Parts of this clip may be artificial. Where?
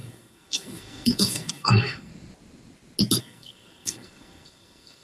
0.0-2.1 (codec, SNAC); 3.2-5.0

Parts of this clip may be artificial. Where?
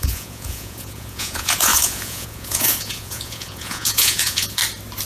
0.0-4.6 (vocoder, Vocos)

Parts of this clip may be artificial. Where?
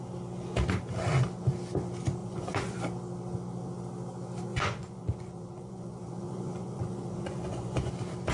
2.2-2.8 (vocoder, Vocos); 4.5-7.9